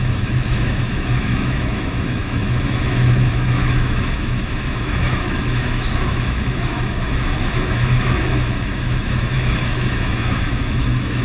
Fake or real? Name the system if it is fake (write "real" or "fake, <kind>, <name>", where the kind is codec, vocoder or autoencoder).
fake, autoencoder, DAC-VAE